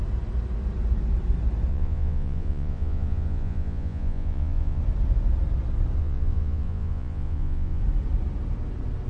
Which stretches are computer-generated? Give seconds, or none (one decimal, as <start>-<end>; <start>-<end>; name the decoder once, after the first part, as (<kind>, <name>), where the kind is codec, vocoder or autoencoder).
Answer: 1.7-4.8 (vocoder, Vocos); 6.0-7.8